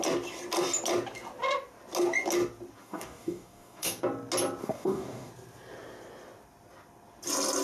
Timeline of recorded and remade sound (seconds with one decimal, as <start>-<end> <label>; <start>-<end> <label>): 0.0-2.8 recorded; 2.8-4.0 remade; 4.0-4.6 recorded; 4.6-5.3 remade; 5.3-7.6 recorded

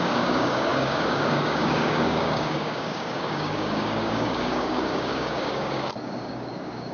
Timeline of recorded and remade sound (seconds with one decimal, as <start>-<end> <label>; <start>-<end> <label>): 0.0-6.9 remade